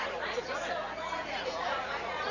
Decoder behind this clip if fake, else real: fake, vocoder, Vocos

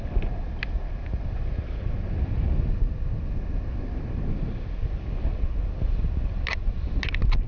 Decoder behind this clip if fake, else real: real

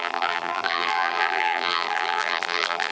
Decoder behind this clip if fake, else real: fake, vocoder, BigVGAN v2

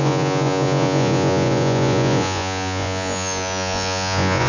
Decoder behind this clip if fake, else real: fake, vocoder, Vocos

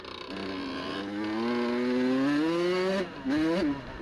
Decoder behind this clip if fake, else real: real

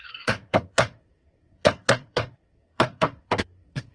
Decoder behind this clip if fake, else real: fake, codec, SNAC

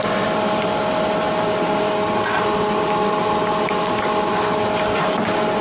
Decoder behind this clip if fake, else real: real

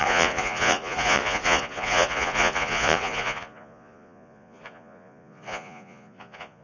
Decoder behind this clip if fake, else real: fake, vocoder, Vocos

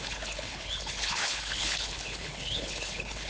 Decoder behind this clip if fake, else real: fake, codec, HILCodec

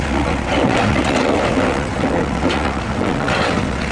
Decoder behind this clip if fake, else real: fake, vocoder, WaveNeXt